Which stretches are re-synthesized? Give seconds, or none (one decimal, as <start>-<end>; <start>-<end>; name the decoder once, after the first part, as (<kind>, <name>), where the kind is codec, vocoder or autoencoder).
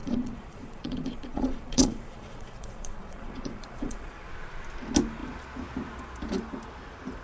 0.0-4.3 (vocoder, Vocos)